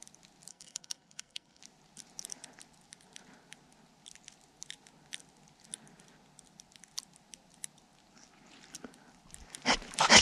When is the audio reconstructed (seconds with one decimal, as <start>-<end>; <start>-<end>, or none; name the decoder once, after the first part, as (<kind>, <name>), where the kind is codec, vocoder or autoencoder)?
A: 0.5-1.6 (codec, SNAC)